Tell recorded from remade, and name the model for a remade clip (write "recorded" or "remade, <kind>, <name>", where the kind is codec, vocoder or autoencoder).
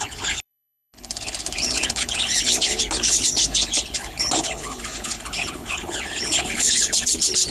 remade, codec, HILCodec